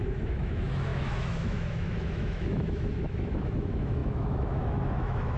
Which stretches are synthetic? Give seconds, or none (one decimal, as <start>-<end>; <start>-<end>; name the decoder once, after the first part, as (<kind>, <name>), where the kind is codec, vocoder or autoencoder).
0.0-5.4 (autoencoder, DAC-VAE)